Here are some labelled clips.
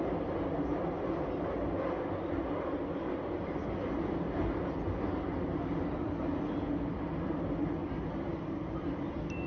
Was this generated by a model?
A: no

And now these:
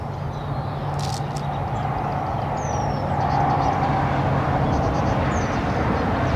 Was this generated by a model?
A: no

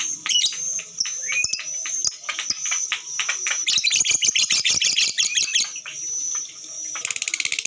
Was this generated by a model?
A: no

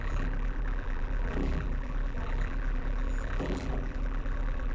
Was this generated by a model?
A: yes